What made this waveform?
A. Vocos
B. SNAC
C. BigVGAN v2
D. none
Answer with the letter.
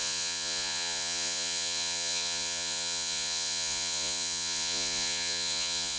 A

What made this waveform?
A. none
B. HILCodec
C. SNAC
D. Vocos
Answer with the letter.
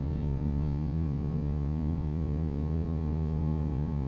D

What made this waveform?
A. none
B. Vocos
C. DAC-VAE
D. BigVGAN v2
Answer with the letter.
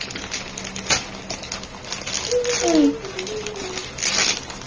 A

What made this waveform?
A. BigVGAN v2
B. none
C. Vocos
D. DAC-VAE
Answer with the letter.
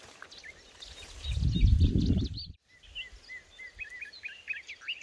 B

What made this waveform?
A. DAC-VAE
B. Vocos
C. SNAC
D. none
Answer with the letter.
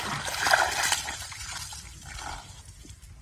D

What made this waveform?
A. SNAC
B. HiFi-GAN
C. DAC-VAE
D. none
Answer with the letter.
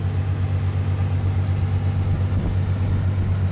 D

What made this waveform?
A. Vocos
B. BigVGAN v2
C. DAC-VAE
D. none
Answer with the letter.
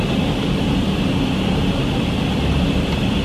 D